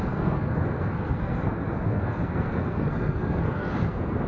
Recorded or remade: remade